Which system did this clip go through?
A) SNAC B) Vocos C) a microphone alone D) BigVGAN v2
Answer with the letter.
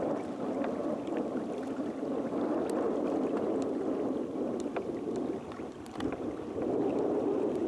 C